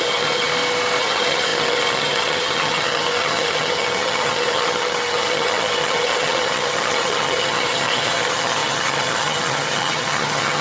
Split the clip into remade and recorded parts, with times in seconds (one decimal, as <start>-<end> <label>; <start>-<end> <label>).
0.0-0.5 remade; 0.5-1.0 recorded; 1.0-10.6 remade